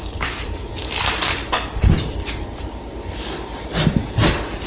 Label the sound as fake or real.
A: real